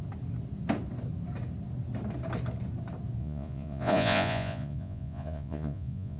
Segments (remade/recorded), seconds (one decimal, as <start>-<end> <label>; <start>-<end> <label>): 0.0-3.2 recorded; 3.2-6.2 remade